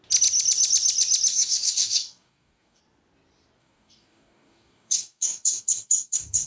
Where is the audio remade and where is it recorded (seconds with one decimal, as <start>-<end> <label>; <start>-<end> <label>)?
0.0-1.3 recorded; 1.3-2.8 remade; 2.8-3.6 recorded; 3.6-6.5 remade